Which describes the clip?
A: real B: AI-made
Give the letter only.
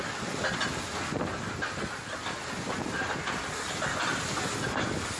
A